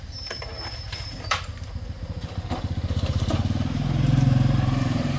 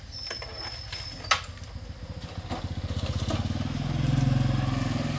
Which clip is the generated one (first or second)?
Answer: first